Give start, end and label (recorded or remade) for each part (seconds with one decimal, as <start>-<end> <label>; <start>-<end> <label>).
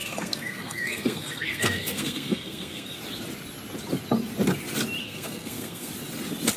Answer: 0.0-3.0 remade; 3.0-5.0 recorded; 5.0-5.9 remade; 5.9-6.6 recorded